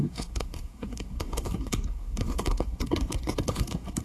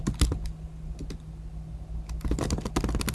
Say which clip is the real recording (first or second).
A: second